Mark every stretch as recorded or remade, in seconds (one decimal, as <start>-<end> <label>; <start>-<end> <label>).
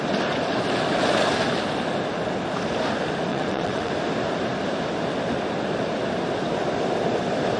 0.0-3.3 recorded; 3.3-3.9 remade; 3.9-7.6 recorded